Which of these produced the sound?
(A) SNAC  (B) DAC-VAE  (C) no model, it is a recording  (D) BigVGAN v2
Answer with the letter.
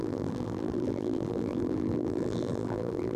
D